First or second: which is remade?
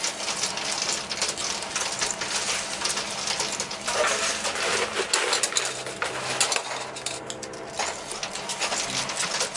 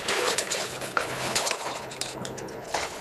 second